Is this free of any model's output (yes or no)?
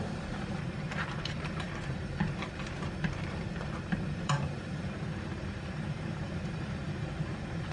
no